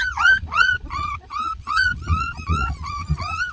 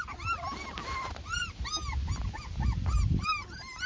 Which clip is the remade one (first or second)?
first